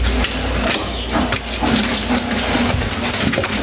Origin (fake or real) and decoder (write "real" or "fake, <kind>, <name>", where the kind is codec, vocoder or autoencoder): real